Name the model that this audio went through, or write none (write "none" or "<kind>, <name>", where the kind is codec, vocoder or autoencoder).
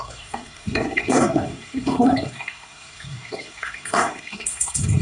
codec, SNAC